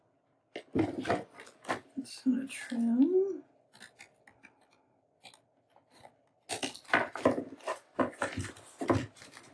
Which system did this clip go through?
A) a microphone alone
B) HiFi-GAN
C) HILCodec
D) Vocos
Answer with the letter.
A